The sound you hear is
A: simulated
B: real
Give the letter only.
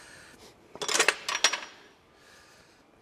B